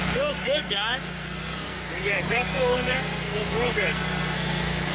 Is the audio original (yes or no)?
no